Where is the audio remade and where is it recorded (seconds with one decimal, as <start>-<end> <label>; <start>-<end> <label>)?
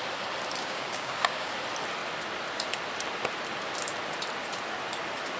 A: 0.0-0.6 recorded; 0.6-1.5 remade; 1.5-5.4 recorded